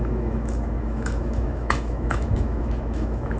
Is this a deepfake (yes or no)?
yes